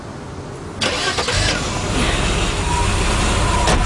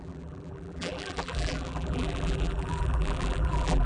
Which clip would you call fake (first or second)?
second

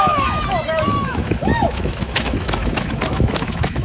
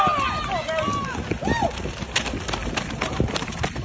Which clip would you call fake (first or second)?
first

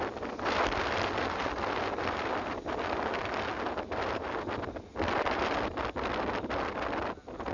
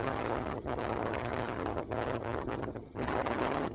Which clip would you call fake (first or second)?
second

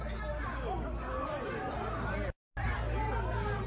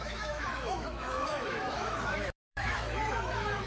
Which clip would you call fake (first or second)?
second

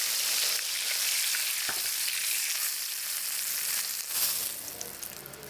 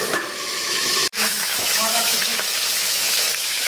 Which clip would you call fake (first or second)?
second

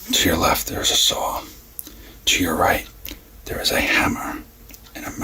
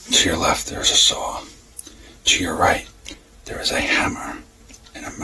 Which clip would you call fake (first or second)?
second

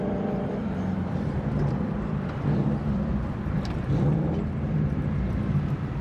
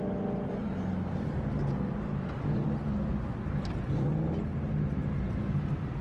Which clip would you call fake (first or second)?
first